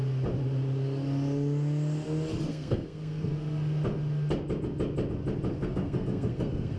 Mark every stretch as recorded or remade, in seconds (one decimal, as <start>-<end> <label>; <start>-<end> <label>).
0.0-2.5 recorded; 2.5-3.3 remade; 3.3-5.5 recorded; 5.5-6.8 remade